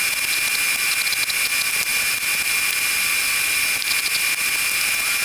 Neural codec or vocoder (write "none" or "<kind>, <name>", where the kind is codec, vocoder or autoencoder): none